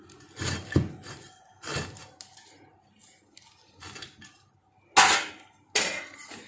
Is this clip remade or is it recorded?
recorded